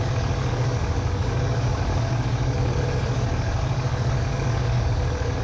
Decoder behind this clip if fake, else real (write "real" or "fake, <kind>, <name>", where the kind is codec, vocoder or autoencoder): fake, codec, DAC